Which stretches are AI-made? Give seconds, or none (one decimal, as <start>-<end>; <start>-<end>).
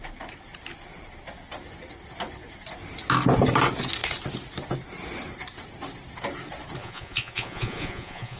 6.8-8.4